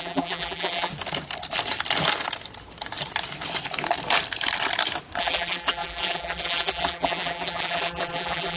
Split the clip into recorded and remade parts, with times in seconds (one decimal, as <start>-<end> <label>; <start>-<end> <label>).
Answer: 0.0-0.9 remade; 0.9-5.2 recorded; 5.2-8.6 remade